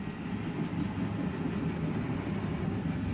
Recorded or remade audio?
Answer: recorded